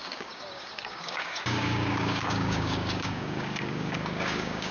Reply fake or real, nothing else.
fake